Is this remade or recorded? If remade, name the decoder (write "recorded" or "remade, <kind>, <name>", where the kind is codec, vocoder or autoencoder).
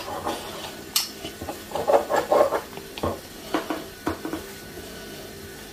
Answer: recorded